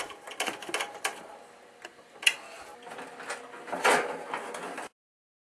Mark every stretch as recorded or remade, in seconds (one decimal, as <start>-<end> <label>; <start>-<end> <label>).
0.0-5.5 recorded